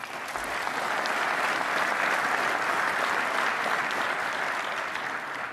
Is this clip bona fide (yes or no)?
yes